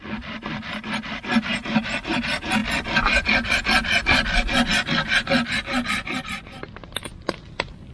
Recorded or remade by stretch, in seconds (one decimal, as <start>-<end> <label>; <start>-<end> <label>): 0.0-1.5 recorded; 1.5-2.2 remade; 2.2-7.9 recorded